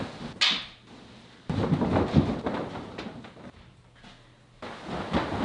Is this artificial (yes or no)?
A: no